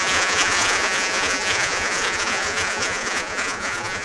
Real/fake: fake